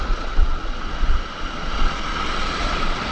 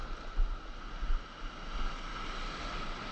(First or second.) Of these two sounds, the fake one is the first